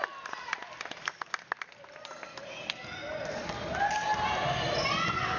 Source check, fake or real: real